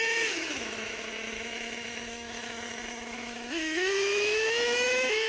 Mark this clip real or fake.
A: fake